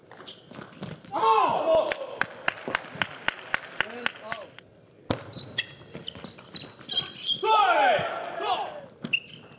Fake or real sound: real